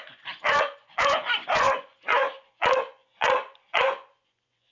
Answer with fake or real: fake